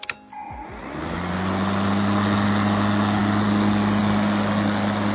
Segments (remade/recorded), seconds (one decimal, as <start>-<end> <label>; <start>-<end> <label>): 0.0-5.1 recorded